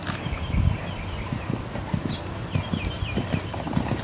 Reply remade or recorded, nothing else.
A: recorded